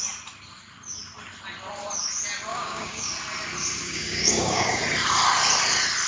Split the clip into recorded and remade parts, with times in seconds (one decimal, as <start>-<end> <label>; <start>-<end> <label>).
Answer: 0.0-2.5 recorded; 2.5-3.1 remade; 3.1-3.8 recorded; 3.8-4.8 remade; 4.8-6.1 recorded